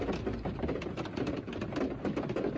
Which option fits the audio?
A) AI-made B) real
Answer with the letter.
B